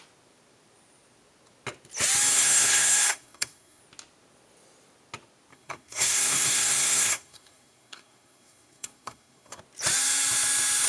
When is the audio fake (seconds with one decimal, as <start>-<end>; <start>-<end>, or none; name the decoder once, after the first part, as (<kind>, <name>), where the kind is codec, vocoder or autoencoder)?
2.3-3.8 (codec, SNAC); 5.5-9.6